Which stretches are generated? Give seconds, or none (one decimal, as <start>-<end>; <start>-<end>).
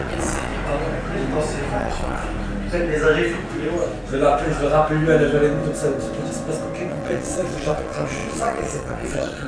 0.0-0.5; 1.8-2.2; 6.9-9.5